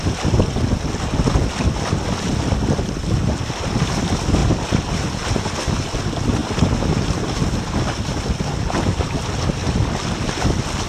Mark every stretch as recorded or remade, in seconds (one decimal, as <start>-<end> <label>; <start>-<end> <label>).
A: 0.0-10.9 recorded